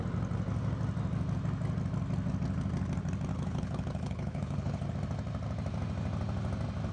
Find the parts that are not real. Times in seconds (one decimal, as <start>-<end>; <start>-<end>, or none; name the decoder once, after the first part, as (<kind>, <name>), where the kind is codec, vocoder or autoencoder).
3.3-4.9 (codec, HILCodec)